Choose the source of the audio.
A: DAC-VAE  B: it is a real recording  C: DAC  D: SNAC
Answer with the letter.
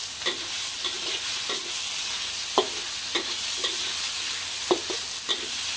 B